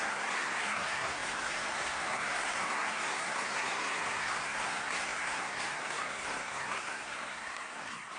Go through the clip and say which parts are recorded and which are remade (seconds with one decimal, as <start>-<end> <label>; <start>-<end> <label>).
0.0-8.2 remade